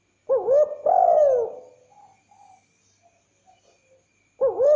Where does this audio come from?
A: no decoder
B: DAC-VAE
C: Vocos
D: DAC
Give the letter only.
A